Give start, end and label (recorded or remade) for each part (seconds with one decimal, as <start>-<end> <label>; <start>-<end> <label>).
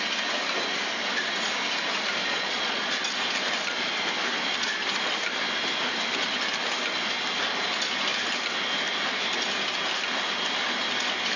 0.0-2.2 recorded; 2.2-2.9 remade; 2.9-11.4 recorded